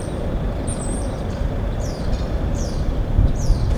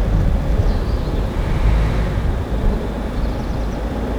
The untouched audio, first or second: second